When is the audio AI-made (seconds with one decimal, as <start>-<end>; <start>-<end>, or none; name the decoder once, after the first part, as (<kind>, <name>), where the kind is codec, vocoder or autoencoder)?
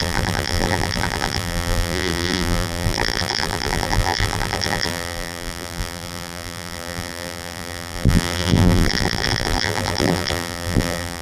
0.0-11.2 (vocoder, BigVGAN v2)